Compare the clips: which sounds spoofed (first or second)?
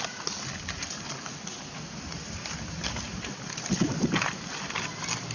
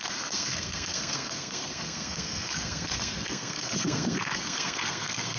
second